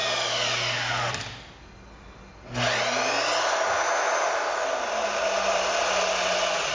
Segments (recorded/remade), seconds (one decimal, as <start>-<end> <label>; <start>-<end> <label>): 0.0-6.7 recorded